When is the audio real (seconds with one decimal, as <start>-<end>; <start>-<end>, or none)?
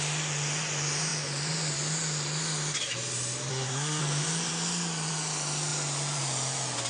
0.0-3.5; 4.0-6.9